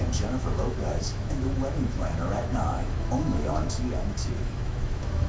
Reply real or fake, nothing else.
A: fake